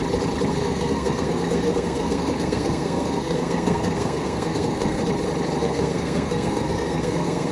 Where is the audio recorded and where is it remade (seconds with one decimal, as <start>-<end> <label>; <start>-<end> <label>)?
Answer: 0.0-0.5 recorded; 0.5-5.0 remade; 5.0-5.6 recorded; 5.6-7.5 remade